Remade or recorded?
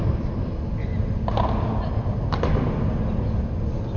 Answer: recorded